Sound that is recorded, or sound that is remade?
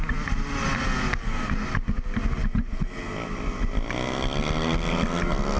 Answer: recorded